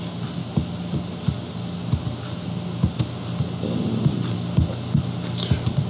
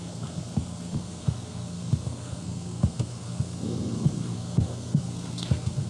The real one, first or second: first